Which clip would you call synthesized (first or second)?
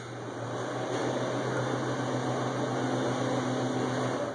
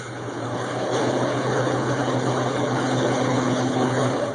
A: second